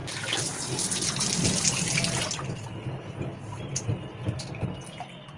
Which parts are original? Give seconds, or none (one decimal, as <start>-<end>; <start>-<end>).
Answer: 0.0-5.4